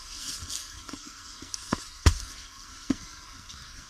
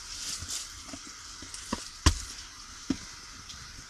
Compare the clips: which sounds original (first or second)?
second